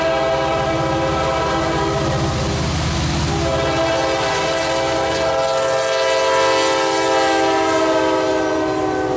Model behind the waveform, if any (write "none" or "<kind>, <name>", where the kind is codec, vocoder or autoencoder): none